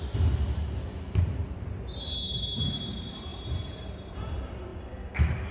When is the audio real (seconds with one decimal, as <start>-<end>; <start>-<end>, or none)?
0.0-3.3; 4.3-5.5